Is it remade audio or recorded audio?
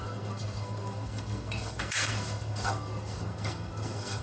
remade